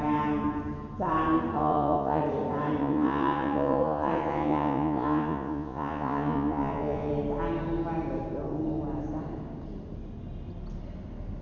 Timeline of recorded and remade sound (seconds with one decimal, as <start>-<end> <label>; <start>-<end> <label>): 0.0-1.6 recorded; 1.6-2.2 remade; 2.2-2.8 recorded; 2.8-7.1 remade; 7.1-11.4 recorded

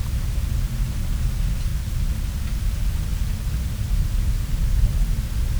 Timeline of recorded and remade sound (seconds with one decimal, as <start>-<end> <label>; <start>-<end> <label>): 0.0-5.6 recorded

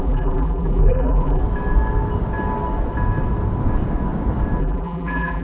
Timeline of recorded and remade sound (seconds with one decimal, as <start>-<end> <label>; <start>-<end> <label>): 0.0-1.4 remade; 1.4-4.6 recorded; 4.6-5.4 remade

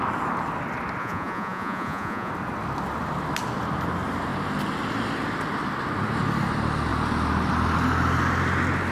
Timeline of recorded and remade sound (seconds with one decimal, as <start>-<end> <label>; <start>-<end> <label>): 0.0-1.0 recorded; 1.0-2.3 remade; 2.3-8.9 recorded

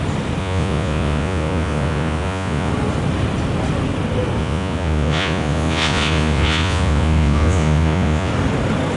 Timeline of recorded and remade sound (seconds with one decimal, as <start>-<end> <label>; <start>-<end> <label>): 0.0-0.4 recorded; 0.4-2.7 remade; 2.7-4.4 recorded; 4.4-8.3 remade; 8.3-9.0 recorded

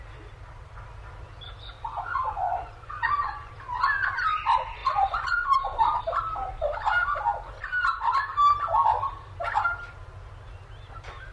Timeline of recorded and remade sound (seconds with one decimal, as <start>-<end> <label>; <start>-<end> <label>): 0.0-2.1 recorded; 2.1-3.5 remade; 3.5-4.8 recorded; 4.8-6.0 remade; 6.0-11.3 recorded